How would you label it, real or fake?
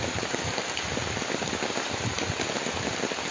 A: real